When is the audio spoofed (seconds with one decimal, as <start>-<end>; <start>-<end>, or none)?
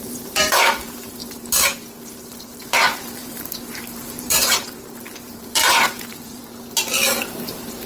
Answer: 0.0-1.2; 2.4-6.4; 7.2-7.9